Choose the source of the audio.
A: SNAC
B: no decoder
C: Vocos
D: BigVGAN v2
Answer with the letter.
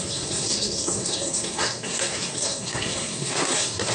A